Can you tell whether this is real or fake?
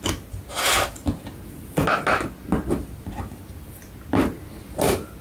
real